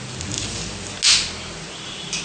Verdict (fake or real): real